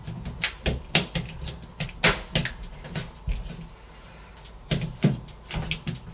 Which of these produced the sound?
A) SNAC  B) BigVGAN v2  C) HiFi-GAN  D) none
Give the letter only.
D